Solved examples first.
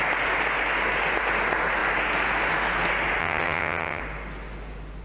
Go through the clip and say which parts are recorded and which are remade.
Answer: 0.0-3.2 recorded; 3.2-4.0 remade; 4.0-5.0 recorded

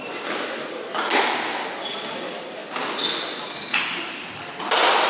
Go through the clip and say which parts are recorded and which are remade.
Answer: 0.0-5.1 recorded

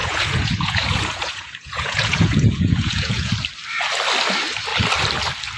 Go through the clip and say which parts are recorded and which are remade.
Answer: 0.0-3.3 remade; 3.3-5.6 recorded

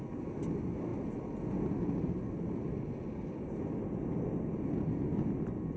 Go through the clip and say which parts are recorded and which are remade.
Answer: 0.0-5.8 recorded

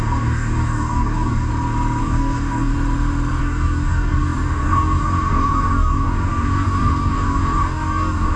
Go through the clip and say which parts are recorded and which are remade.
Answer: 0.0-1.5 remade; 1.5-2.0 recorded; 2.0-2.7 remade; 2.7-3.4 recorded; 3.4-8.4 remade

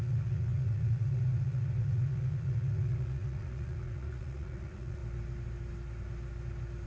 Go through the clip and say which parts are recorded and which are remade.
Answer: 0.0-5.0 remade; 5.0-6.9 recorded

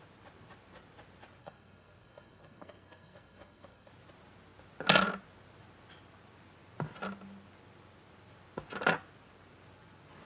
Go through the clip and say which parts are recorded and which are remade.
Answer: 0.0-1.4 recorded; 1.4-3.9 remade; 3.9-10.3 recorded

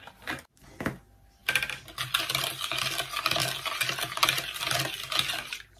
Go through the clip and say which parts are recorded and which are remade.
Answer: 0.0-1.4 recorded; 1.4-2.2 remade; 2.2-3.4 recorded; 3.4-4.6 remade; 4.6-5.8 recorded